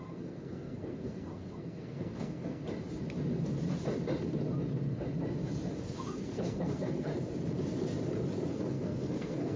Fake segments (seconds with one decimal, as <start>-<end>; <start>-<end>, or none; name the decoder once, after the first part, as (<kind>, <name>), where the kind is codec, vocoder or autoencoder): 0.0-2.6 (codec, SNAC); 5.8-7.1; 8.5-9.6